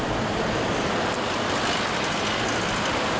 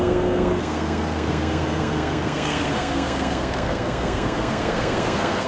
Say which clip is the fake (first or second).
second